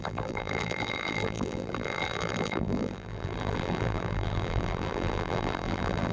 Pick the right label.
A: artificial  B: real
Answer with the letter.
A